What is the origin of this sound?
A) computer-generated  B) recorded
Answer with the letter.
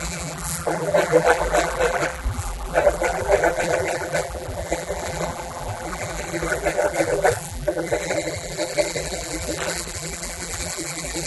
A